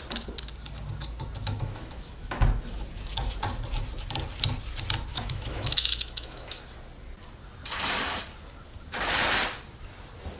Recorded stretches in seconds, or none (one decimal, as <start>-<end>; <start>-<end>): 0.0-1.4; 2.4-5.1; 6.6-10.4